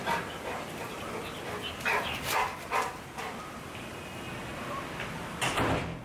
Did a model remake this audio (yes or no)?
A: no